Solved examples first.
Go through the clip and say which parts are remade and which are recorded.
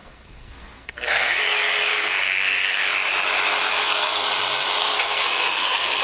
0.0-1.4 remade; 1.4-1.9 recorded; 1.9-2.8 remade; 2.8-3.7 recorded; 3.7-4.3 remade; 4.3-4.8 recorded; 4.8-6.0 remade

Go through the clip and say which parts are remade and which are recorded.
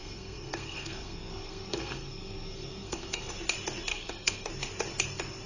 0.0-3.3 remade; 3.3-3.9 recorded; 3.9-4.5 remade; 4.5-5.5 recorded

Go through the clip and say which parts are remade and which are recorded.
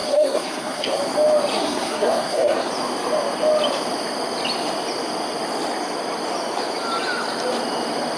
0.0-1.0 remade; 1.0-1.5 recorded; 1.5-2.7 remade; 2.7-8.2 recorded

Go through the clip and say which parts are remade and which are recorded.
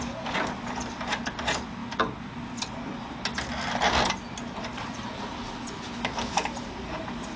0.0-7.4 recorded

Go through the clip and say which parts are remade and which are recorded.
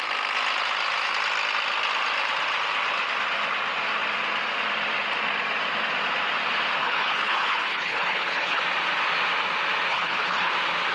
0.0-6.8 recorded; 6.8-8.6 remade; 8.6-9.9 recorded; 9.9-10.5 remade; 10.5-10.9 recorded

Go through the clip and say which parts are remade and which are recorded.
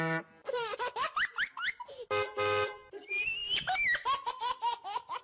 0.0-5.2 remade